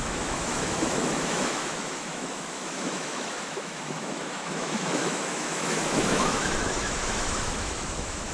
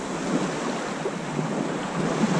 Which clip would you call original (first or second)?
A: second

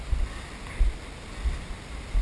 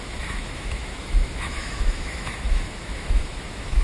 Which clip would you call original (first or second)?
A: first